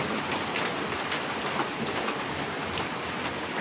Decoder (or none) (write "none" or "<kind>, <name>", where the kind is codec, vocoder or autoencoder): none